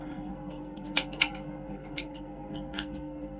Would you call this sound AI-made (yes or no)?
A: yes